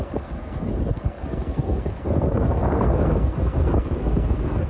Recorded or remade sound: remade